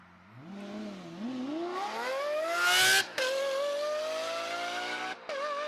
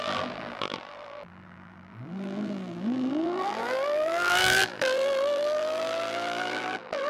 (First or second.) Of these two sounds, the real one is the first